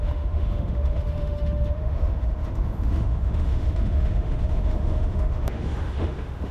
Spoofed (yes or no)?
yes